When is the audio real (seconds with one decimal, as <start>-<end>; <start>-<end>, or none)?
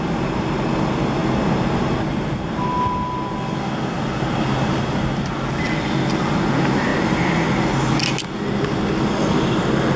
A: 0.0-10.0